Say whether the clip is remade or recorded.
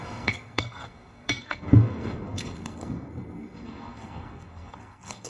remade